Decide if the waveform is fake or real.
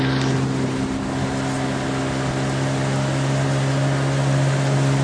real